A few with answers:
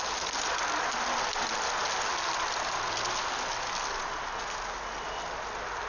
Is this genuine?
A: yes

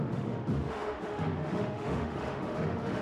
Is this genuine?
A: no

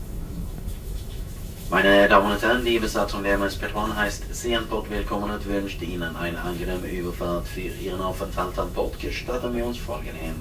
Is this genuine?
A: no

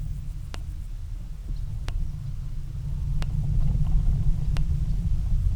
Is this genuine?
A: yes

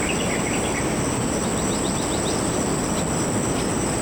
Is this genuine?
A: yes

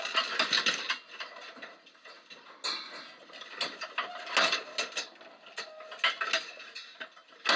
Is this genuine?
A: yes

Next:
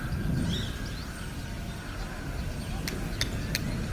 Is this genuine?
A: yes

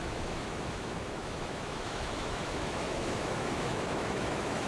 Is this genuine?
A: no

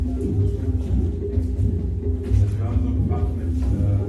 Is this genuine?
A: yes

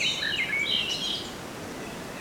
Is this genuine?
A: yes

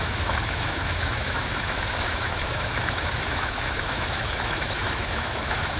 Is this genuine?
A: no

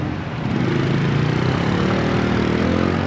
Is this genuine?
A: yes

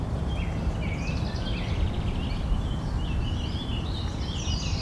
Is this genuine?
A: yes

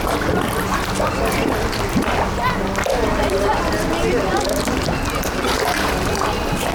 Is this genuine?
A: yes